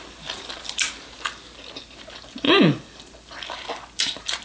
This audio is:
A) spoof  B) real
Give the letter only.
B